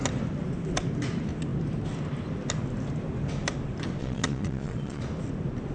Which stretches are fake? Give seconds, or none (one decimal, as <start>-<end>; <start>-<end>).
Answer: 4.0-5.0